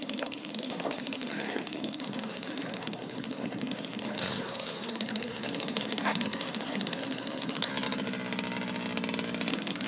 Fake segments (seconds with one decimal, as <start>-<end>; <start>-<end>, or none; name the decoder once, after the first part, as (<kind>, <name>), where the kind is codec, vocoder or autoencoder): 0.0-7.7 (codec, SNAC); 9.5-9.9